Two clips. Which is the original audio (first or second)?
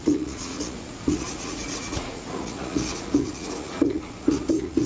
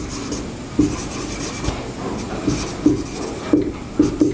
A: second